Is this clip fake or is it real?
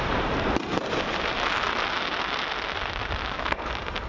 real